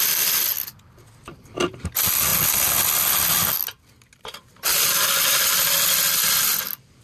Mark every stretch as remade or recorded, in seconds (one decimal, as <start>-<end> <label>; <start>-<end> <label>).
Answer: 0.0-0.7 recorded; 0.7-1.8 remade; 1.8-7.0 recorded